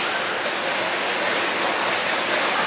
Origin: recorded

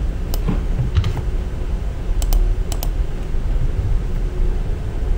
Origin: recorded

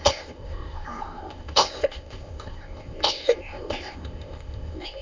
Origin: remade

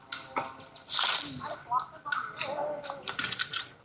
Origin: recorded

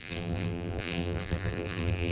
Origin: remade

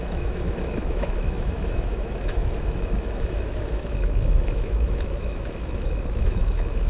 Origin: remade